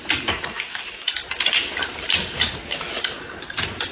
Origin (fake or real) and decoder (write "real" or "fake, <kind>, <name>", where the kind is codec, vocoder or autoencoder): real